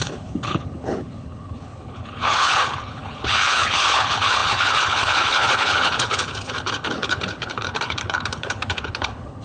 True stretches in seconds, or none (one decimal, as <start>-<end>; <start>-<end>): none

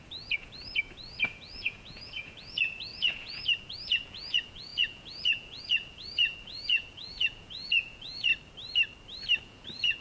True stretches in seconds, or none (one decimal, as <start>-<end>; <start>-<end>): 8.3-9.4